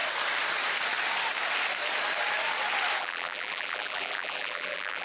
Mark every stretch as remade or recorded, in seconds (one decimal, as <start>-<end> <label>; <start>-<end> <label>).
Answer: 0.0-3.0 recorded; 3.0-5.0 remade

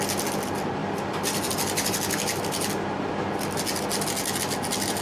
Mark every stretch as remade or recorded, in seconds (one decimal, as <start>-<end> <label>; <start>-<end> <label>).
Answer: 0.0-0.8 recorded; 0.8-3.8 remade; 3.8-5.0 recorded

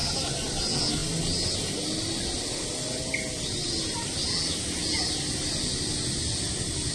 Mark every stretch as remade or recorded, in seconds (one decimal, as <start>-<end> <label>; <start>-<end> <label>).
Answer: 0.0-6.9 recorded

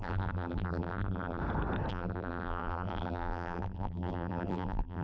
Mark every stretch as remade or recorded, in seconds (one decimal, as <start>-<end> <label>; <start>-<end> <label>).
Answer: 0.0-1.4 remade; 1.4-1.9 recorded; 1.9-5.0 remade